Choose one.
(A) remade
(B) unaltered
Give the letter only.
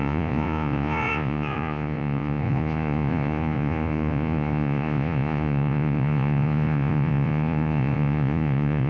A